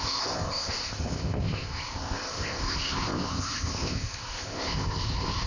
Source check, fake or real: fake